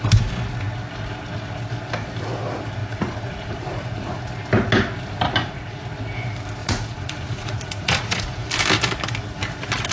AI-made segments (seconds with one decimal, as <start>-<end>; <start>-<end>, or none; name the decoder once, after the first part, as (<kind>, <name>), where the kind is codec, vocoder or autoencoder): 2.8-4.3 (vocoder, Vocos); 5.4-5.9; 6.6-8.5